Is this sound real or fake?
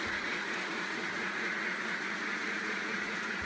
fake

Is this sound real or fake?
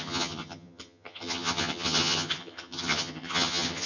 fake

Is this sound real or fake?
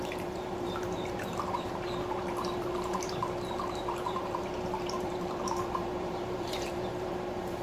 fake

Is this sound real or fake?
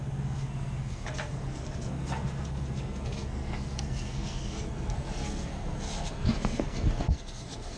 fake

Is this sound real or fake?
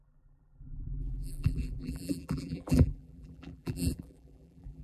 fake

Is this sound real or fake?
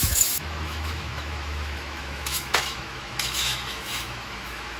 fake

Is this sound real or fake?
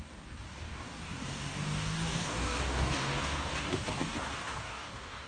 fake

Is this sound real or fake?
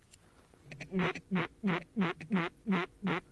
fake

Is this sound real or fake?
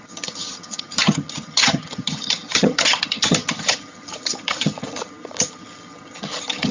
fake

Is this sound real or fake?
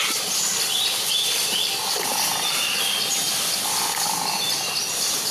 real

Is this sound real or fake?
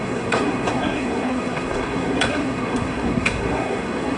fake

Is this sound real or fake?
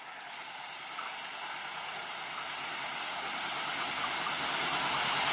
real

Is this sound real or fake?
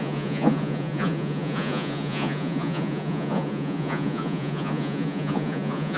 fake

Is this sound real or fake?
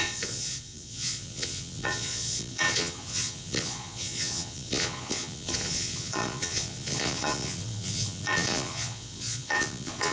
fake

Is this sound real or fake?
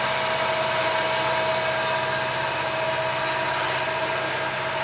real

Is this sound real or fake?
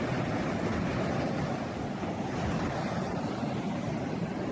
real